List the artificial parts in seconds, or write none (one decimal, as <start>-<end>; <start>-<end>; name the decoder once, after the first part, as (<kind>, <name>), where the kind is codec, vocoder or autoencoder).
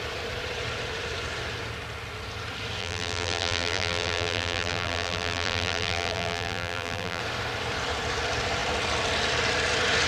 2.8-7.2 (vocoder, BigVGAN v2)